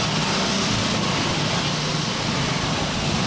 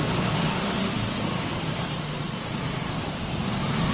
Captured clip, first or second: first